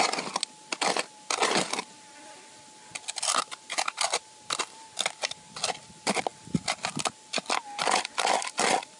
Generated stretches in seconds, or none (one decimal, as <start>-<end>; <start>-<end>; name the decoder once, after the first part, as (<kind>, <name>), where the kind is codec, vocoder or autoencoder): none